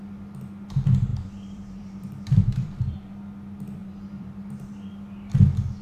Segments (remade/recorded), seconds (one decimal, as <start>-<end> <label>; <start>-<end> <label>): 0.0-1.1 recorded; 1.1-3.1 remade; 3.1-3.8 recorded; 3.8-4.7 remade; 4.7-5.8 recorded